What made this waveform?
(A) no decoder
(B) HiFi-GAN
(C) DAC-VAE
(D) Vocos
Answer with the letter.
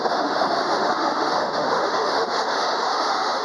C